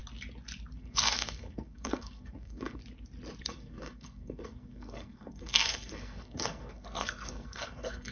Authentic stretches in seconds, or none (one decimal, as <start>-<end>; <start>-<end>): 0.0-0.8; 2.8-3.4